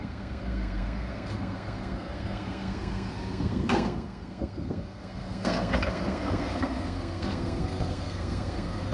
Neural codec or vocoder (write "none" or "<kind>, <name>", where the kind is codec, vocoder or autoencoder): codec, SNAC